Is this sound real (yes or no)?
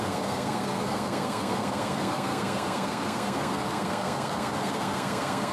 no